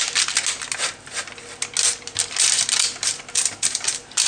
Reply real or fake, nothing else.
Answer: real